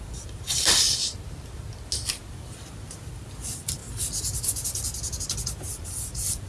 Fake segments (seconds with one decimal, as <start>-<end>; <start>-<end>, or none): 0.0-1.0; 2.3-3.8; 5.7-6.5